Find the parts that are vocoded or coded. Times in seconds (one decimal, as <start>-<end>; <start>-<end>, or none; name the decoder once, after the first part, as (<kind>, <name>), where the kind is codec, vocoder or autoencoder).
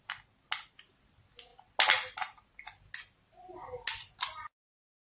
none